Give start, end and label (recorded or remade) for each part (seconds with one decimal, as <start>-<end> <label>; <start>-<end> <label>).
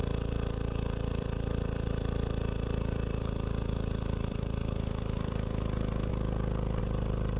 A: 0.0-6.1 remade; 6.1-6.8 recorded; 6.8-7.4 remade